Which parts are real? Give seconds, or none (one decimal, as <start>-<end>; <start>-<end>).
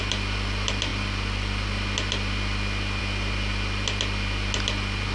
0.0-5.1